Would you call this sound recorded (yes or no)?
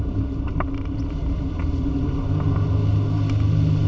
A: yes